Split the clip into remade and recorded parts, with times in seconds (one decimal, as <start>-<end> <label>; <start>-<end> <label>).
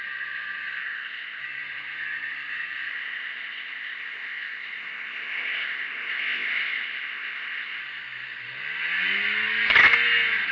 0.0-0.8 recorded; 0.8-1.4 remade; 1.4-2.9 recorded; 2.9-7.8 remade; 7.8-10.5 recorded